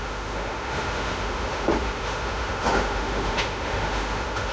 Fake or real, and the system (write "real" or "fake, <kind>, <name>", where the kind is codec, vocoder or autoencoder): fake, autoencoder, DAC-VAE